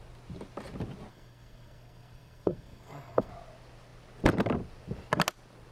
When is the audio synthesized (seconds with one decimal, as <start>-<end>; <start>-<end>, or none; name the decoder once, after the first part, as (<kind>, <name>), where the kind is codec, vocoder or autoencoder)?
1.1-3.3 (codec, SNAC)

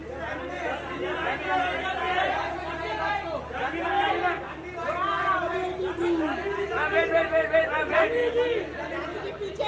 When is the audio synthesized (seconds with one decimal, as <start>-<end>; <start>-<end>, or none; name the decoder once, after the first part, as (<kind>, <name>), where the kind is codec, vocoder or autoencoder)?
none